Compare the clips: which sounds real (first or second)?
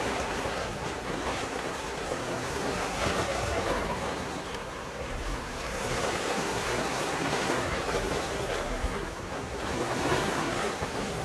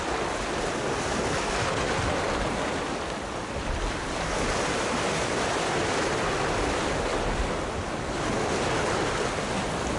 second